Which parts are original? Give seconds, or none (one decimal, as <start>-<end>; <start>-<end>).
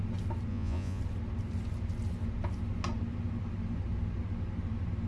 0.0-0.5; 1.0-5.1